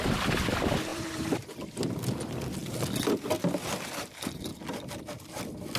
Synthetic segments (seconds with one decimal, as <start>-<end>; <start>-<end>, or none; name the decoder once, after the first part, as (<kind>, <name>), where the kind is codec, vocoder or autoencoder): 0.9-1.9 (vocoder, BigVGAN v2)